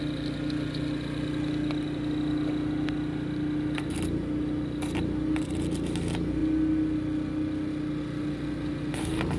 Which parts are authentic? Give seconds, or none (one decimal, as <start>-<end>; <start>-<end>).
0.0-9.4